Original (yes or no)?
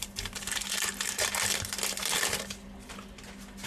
yes